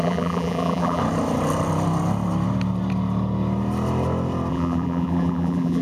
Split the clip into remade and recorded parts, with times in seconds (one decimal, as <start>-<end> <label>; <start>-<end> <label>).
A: 0.0-1.0 remade; 1.0-4.5 recorded; 4.5-5.8 remade